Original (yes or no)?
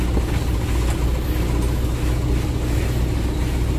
yes